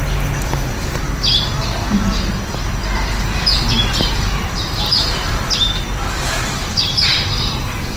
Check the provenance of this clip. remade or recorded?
recorded